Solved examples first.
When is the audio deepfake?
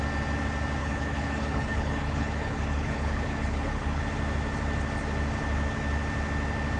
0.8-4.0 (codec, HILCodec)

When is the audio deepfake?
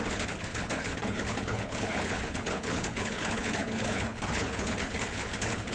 0.0-5.7 (codec, HILCodec)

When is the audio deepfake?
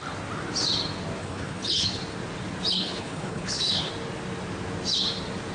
1.2-2.0 (codec, HILCodec); 2.7-3.9